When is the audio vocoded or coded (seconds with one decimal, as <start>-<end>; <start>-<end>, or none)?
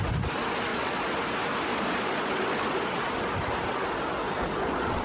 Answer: 0.7-1.2; 1.7-2.9; 4.2-5.0